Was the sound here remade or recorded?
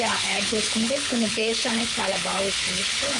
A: remade